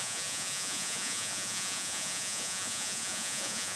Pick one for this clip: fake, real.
fake